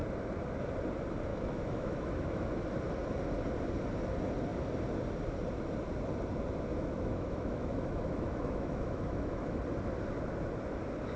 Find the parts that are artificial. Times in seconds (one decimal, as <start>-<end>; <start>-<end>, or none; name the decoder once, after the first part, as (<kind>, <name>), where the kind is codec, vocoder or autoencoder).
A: 1.3-2.5 (autoencoder, DAC-VAE); 6.7-9.6